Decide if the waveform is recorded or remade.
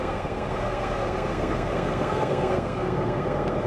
remade